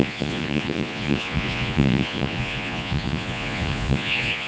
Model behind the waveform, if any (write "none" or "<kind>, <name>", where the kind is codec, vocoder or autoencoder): vocoder, Vocos